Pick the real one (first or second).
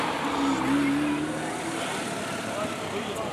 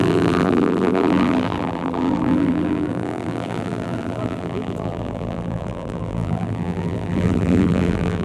first